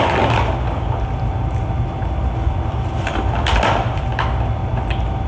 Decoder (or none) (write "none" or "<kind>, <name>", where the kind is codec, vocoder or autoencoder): none